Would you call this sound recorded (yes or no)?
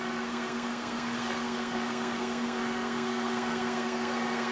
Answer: no